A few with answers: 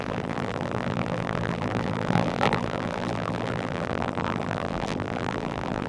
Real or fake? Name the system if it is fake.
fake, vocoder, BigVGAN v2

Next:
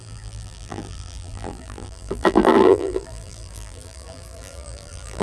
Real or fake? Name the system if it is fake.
fake, vocoder, BigVGAN v2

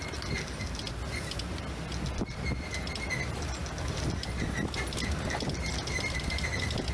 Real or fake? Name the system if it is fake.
real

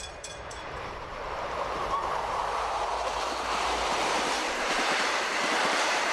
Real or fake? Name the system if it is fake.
fake, vocoder, BigVGAN v2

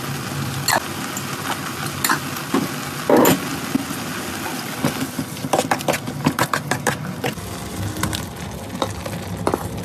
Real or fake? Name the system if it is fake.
real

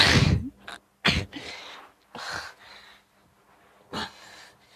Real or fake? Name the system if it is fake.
real